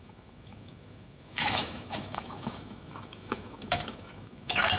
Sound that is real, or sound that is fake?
fake